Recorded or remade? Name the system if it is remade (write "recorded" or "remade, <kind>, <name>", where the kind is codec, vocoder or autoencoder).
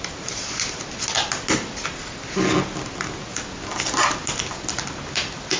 recorded